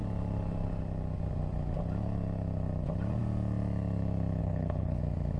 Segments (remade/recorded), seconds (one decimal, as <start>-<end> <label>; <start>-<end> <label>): 0.0-4.4 recorded; 4.4-5.0 remade; 5.0-5.4 recorded